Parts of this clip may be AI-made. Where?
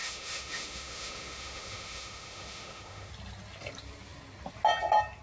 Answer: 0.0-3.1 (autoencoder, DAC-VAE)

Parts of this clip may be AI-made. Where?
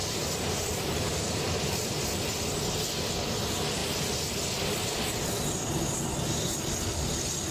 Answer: 0.0-2.1 (vocoder, BigVGAN v2)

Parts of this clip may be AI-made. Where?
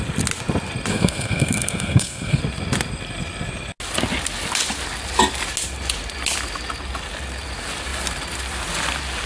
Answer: 0.9-2.4 (codec, SNAC)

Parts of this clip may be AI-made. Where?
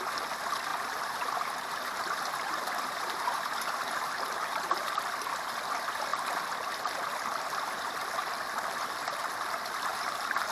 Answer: 0.7-4.9 (vocoder, BigVGAN v2); 9.9-10.5